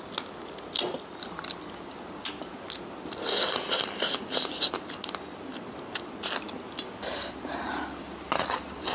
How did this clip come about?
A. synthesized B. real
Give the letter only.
B